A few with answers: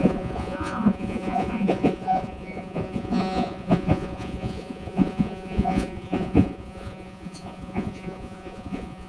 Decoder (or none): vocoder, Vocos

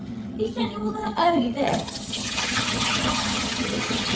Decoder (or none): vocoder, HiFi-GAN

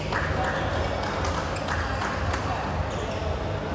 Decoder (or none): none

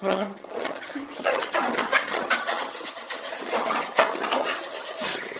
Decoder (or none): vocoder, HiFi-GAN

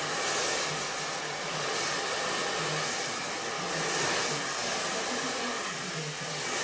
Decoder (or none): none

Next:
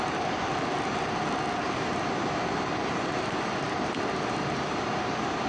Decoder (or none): vocoder, BigVGAN v2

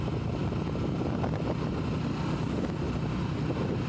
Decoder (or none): none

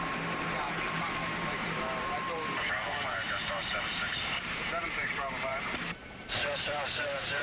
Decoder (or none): vocoder, BigVGAN v2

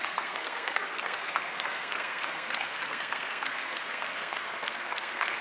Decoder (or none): codec, SNAC